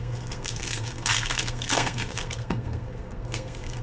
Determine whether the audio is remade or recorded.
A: remade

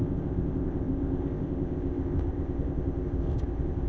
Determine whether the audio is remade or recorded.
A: remade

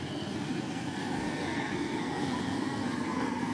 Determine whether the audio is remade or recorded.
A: remade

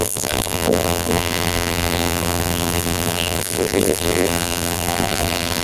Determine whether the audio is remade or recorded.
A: remade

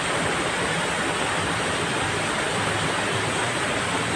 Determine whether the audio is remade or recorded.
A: recorded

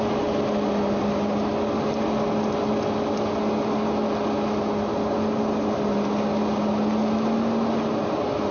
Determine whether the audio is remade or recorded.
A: recorded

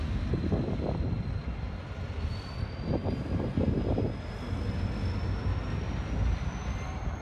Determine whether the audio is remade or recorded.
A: recorded